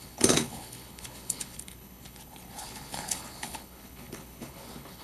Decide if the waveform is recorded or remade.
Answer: remade